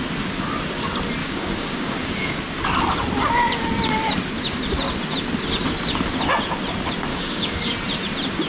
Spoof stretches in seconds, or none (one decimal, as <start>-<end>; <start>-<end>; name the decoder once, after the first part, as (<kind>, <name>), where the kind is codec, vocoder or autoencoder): 1.2-2.4 (codec, DAC); 7.1-7.7